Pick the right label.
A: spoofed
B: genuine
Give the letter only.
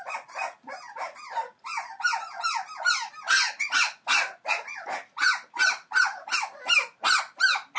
B